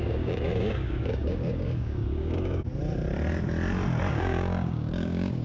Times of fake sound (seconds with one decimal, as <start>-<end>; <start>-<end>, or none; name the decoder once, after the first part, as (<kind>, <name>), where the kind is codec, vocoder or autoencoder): 0.0-2.7 (codec, DAC); 4.1-5.4